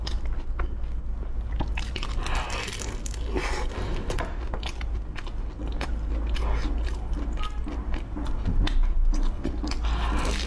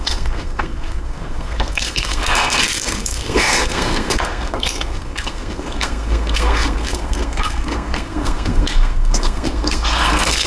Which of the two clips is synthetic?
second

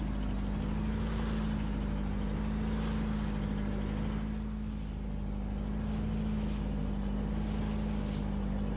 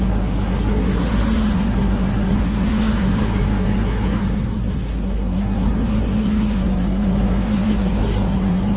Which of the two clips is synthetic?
second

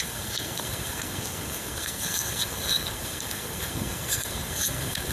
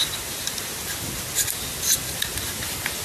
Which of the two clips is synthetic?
first